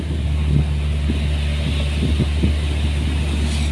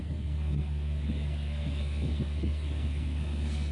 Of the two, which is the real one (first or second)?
first